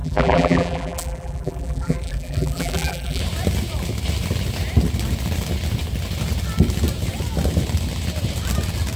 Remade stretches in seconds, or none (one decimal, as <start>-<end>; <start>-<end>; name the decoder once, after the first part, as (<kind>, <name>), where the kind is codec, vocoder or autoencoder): 0.0-3.2 (vocoder, BigVGAN v2)